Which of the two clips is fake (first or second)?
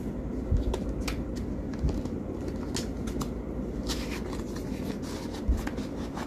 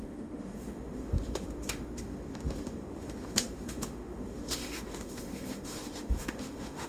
second